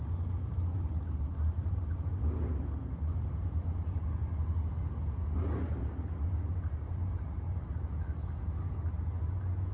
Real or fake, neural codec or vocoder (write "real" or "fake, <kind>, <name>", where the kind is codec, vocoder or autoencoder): real